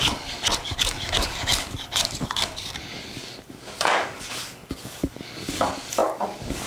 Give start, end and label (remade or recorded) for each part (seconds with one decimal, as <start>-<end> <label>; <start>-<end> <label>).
0.0-6.7 remade